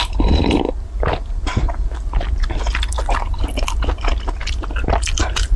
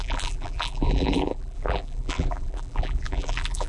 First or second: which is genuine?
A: first